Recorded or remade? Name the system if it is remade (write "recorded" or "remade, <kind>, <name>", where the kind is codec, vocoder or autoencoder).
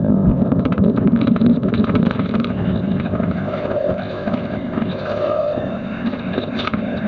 remade, codec, ZipCodec